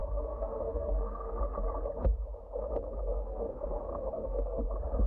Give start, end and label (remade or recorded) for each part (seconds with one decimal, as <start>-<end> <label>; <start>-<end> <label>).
0.0-1.4 remade; 1.4-2.6 recorded; 2.6-4.6 remade; 4.6-5.1 recorded